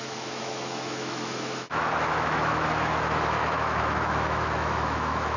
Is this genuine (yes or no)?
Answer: no